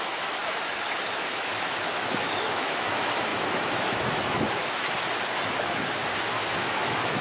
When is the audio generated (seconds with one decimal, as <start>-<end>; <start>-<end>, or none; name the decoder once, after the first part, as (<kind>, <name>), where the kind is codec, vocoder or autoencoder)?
0.0-4.6 (autoencoder, DAC-VAE); 6.5-7.2